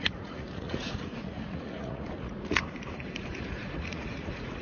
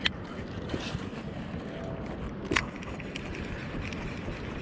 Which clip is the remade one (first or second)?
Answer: first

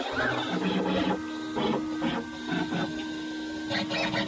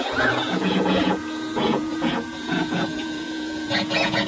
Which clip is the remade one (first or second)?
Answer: second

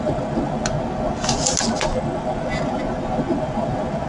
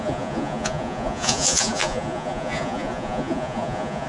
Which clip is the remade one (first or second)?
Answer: second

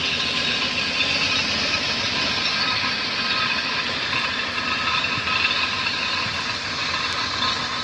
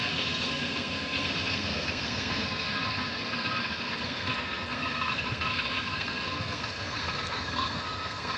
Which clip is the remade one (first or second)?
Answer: second